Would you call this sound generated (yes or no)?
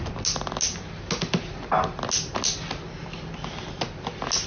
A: no